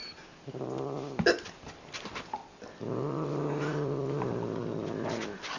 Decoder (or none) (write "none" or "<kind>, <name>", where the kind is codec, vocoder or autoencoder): none